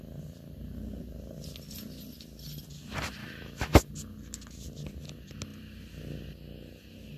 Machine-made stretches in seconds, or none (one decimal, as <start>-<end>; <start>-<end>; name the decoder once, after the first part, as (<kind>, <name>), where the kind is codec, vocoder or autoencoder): 3.2-3.9 (autoencoder, DAC-VAE)